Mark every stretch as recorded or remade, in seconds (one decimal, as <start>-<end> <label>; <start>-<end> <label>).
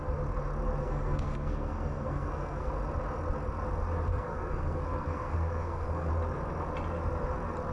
0.0-0.8 recorded; 0.8-2.7 remade; 2.7-4.1 recorded; 4.1-6.1 remade; 6.1-7.7 recorded